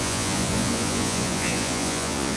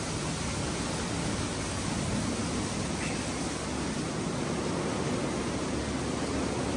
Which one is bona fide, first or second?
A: second